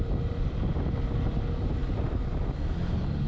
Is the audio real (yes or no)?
yes